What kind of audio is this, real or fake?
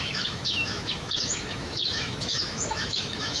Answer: fake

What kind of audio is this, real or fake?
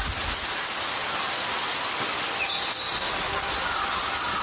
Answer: real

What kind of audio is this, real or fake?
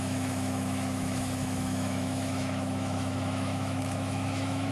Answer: fake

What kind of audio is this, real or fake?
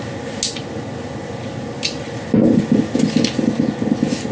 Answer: real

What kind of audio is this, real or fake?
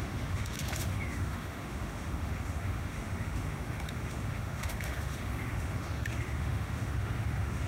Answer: fake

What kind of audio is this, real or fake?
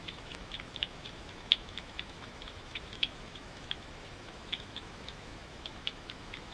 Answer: fake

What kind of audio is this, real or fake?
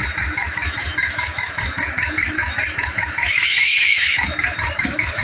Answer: fake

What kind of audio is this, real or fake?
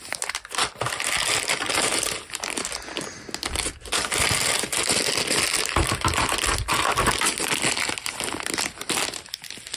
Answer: real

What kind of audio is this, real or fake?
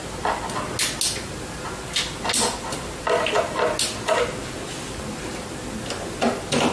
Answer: real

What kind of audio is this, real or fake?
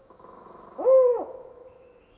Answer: fake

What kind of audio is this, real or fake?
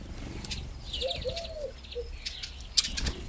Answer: real